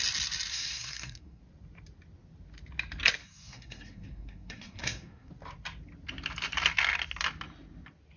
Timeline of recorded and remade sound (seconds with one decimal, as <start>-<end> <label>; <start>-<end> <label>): 0.0-0.5 recorded; 0.5-1.4 remade; 1.4-3.2 recorded; 3.2-5.3 remade; 5.3-8.2 recorded